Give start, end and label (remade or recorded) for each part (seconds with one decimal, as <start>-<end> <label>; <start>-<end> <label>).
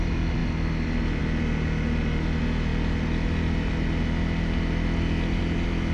0.0-5.9 recorded